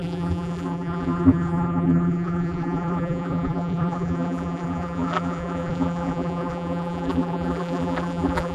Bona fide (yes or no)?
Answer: no